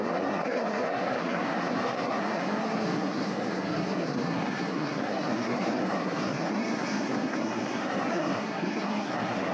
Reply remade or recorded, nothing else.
remade